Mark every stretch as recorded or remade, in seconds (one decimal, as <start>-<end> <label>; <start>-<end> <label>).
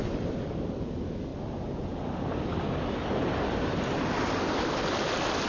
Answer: 0.0-1.3 remade; 1.3-4.6 recorded; 4.6-5.5 remade